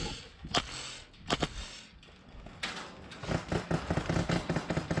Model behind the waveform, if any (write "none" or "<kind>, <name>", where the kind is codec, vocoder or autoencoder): none